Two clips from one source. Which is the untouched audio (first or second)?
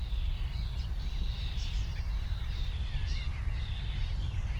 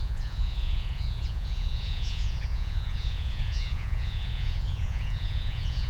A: first